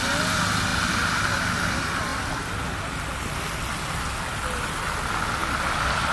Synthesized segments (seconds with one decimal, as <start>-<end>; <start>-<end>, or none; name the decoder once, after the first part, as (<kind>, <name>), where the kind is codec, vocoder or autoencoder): 0.7-1.4 (vocoder, BigVGAN v2)